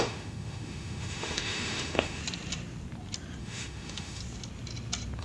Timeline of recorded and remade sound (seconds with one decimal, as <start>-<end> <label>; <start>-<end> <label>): 0.0-2.2 remade; 2.2-3.4 recorded; 3.4-4.2 remade; 4.2-5.2 recorded